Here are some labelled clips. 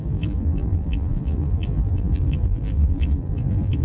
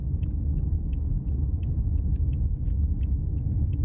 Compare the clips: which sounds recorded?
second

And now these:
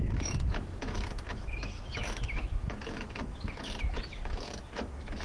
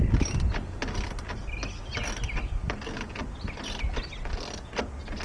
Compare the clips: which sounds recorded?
second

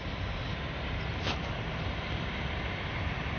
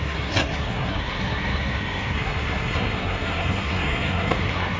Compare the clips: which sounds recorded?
first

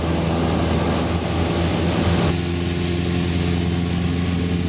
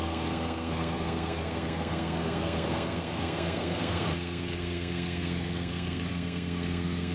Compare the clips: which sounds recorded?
first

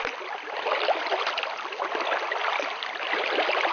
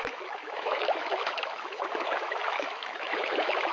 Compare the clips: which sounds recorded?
first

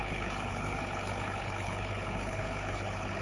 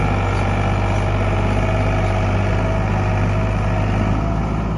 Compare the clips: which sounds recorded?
second